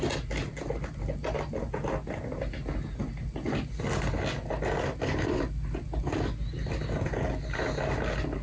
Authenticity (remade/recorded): recorded